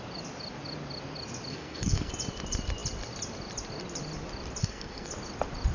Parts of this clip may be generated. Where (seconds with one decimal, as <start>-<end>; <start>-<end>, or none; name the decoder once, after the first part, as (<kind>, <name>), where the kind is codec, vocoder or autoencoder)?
1.5-2.1 (codec, SNAC); 4.6-5.1

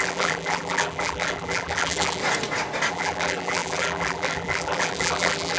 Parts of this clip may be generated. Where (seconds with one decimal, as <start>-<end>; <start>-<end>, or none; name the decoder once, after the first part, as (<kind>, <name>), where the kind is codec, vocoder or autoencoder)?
0.0-2.2 (vocoder, BigVGAN v2); 2.9-5.6

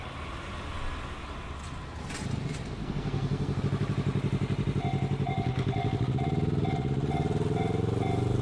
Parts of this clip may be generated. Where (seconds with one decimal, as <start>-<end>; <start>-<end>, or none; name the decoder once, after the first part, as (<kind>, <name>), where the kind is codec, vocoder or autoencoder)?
2.8-3.6 (codec, SNAC)